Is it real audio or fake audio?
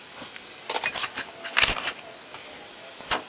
fake